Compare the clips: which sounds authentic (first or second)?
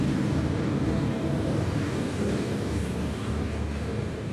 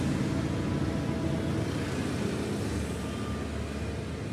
second